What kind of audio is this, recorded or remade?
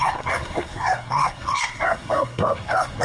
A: remade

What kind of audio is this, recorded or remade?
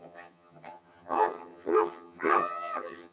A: remade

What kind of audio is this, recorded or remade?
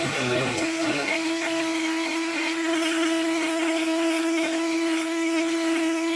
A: remade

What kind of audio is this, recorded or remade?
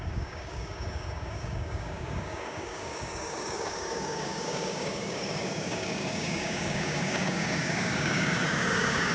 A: remade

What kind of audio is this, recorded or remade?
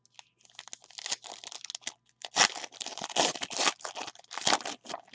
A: recorded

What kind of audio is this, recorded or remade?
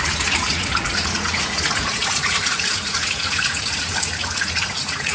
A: remade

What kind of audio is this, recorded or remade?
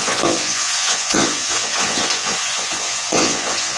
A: remade